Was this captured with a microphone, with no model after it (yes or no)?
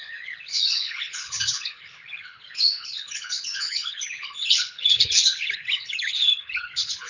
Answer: no